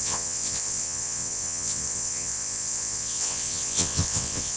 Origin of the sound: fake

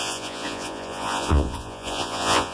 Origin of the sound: fake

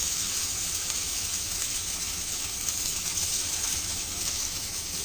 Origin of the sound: fake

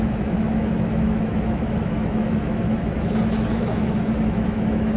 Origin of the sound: fake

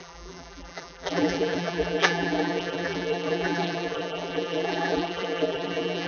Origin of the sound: fake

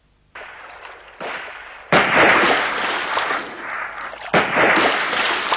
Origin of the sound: real